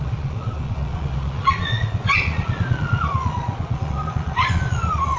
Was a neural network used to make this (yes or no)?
yes